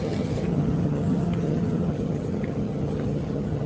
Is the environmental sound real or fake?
fake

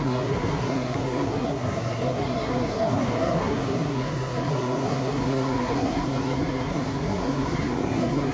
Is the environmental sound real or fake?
fake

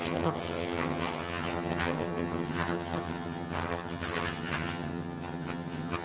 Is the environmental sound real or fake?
fake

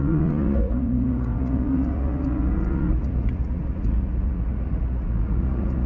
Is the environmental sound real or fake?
fake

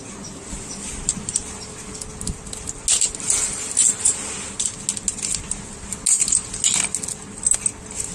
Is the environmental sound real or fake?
real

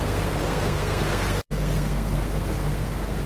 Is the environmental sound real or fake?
fake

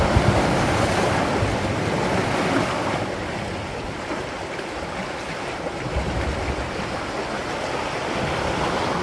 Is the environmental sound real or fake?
real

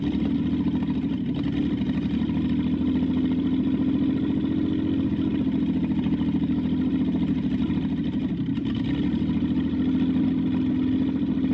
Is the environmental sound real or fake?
real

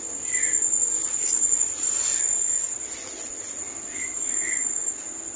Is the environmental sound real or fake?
real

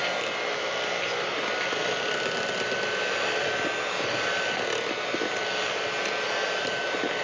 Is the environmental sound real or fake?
real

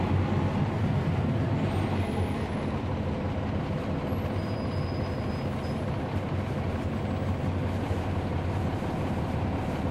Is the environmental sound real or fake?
real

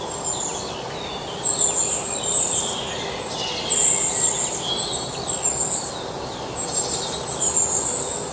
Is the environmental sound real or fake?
real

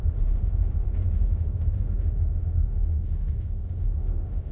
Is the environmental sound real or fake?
fake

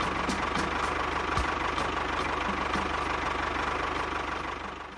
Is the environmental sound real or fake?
real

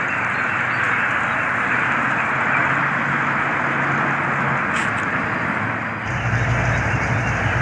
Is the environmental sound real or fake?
real